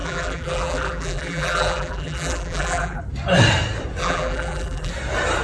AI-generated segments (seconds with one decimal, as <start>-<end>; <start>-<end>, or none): 0.0-3.0; 4.0-4.9